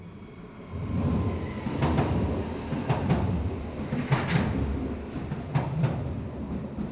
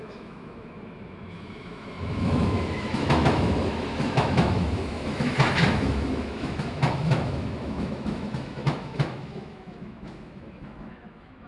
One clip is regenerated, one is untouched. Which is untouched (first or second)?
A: first